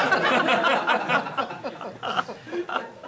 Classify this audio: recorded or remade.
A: recorded